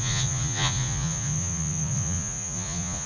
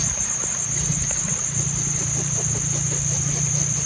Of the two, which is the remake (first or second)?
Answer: first